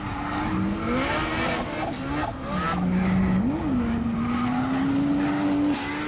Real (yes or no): yes